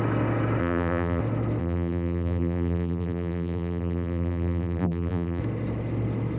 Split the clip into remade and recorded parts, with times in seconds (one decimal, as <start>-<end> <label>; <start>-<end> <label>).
0.0-0.6 recorded; 0.6-1.2 remade; 1.2-1.6 recorded; 1.6-5.4 remade; 5.4-6.4 recorded